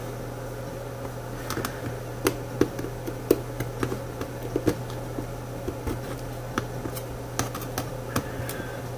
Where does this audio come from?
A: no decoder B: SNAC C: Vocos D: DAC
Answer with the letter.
A